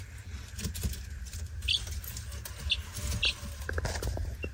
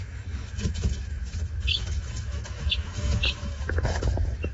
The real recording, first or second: first